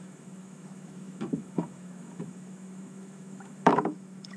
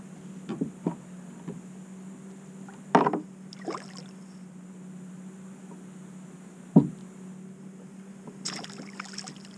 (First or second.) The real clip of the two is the second